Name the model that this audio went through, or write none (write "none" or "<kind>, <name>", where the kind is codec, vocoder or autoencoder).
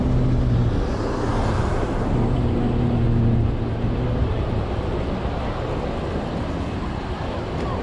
none